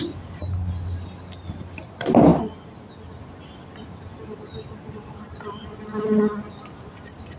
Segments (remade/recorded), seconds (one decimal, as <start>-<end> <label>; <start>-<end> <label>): 0.0-7.4 recorded